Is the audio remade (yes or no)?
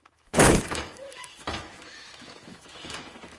yes